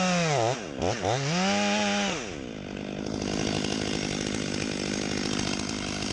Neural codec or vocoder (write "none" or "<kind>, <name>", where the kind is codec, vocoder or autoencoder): none